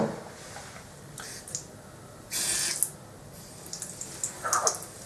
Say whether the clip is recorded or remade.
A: recorded